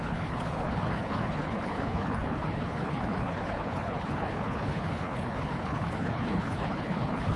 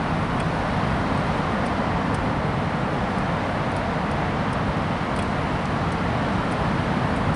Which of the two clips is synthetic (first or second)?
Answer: first